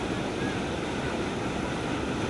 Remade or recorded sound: recorded